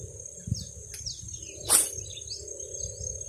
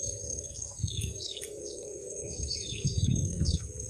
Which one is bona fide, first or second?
first